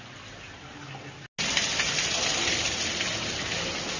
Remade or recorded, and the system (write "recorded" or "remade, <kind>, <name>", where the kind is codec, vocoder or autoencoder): recorded